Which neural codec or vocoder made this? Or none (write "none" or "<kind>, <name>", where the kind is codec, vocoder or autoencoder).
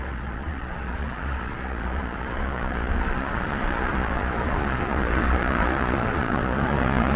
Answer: vocoder, Vocos